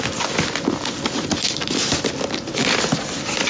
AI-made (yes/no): no